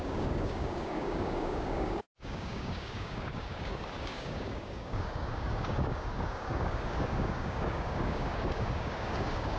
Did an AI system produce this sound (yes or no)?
yes